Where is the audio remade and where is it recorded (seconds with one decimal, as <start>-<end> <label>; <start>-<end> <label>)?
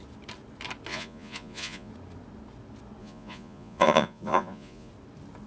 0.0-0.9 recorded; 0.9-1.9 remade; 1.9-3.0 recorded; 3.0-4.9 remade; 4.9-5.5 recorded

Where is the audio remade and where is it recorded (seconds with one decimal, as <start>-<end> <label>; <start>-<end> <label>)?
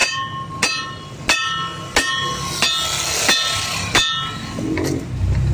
0.0-5.5 recorded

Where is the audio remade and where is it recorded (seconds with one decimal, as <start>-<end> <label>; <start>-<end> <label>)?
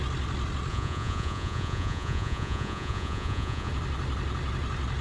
0.0-0.7 recorded; 0.7-3.7 remade; 3.7-5.0 recorded